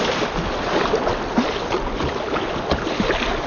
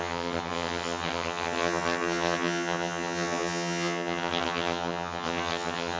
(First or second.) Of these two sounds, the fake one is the second